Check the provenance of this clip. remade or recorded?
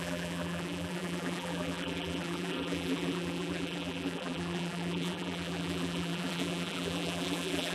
remade